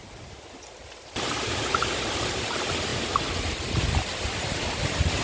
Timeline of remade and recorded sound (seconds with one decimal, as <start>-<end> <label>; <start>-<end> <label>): 0.0-5.2 recorded